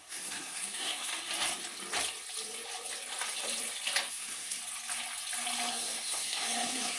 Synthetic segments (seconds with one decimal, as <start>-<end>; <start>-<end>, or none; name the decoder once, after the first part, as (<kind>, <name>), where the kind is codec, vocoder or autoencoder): 0.0-1.1 (codec, SNAC); 4.1-4.6; 5.7-7.0